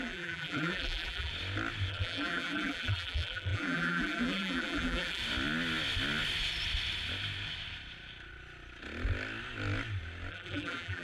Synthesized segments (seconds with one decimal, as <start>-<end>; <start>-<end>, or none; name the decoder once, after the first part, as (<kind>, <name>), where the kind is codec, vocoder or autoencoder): 0.0-1.3 (vocoder, BigVGAN v2); 1.9-5.2; 10.3-11.0